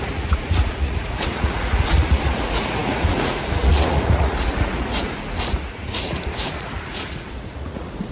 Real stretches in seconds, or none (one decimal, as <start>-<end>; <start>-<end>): none